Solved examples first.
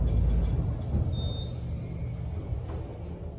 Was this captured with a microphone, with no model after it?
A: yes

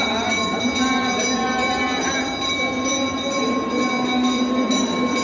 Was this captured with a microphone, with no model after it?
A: yes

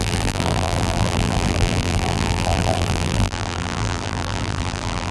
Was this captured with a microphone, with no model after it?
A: no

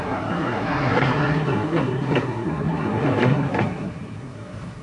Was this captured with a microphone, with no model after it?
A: no